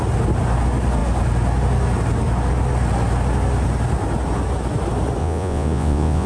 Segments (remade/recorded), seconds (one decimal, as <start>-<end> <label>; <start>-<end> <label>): 0.0-5.2 recorded; 5.2-6.3 remade